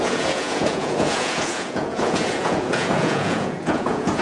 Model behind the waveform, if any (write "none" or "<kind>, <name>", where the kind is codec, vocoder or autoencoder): vocoder, Vocos